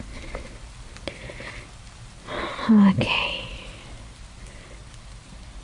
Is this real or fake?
real